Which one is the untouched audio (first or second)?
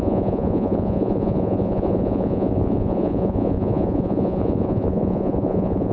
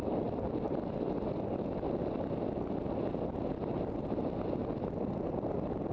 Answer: second